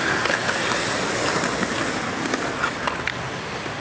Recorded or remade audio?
recorded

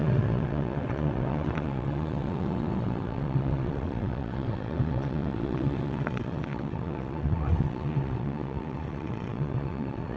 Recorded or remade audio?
remade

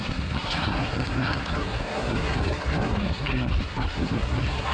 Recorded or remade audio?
remade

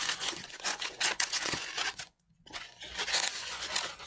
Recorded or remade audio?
remade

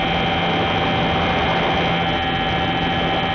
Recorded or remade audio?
recorded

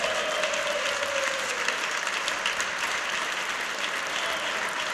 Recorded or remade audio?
recorded